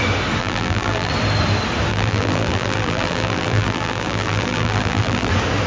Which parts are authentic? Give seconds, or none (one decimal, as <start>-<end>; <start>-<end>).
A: 0.0-0.4; 1.1-1.9; 5.3-5.7